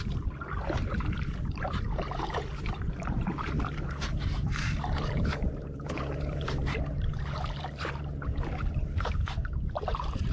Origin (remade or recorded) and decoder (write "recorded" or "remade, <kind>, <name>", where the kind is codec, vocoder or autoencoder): remade, vocoder, BigVGAN v2